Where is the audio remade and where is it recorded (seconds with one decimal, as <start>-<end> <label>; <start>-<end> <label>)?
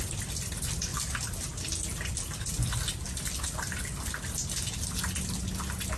0.0-6.0 recorded